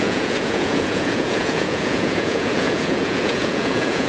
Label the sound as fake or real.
fake